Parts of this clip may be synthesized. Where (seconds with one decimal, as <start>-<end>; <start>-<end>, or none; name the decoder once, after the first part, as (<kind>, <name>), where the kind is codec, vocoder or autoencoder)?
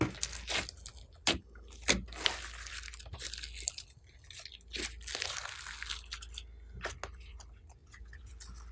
none